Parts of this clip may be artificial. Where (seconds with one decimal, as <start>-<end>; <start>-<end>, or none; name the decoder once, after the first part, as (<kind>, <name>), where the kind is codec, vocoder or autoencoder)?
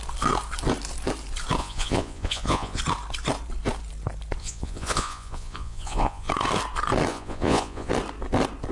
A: 1.6-2.8 (vocoder, Vocos); 4.4-6.3; 7.1-7.9